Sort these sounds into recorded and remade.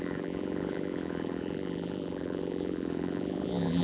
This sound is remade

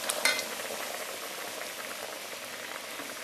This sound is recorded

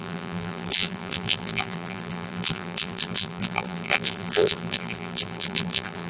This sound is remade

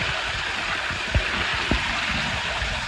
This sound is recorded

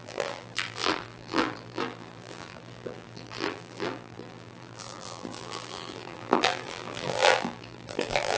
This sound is remade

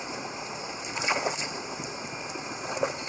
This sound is recorded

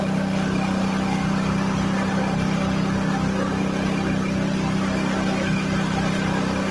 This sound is recorded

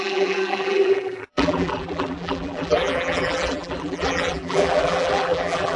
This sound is remade